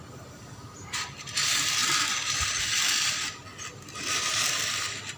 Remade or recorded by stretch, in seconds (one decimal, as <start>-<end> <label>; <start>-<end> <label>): 0.0-5.2 recorded